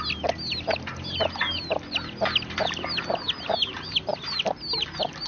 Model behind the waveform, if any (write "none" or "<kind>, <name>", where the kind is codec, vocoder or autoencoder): none